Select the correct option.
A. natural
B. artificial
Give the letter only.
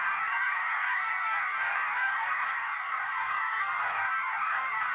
B